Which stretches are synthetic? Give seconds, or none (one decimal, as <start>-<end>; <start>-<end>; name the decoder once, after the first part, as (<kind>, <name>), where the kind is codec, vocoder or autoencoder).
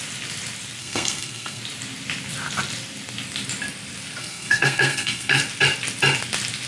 0.8-1.6 (codec, SNAC); 4.2-5.4